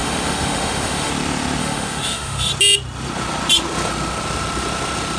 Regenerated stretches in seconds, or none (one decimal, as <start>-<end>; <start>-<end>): 0.0-1.1; 1.6-2.5